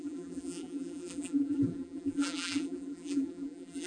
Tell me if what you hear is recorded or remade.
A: remade